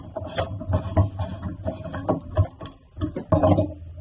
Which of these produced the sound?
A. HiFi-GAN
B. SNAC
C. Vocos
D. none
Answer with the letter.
D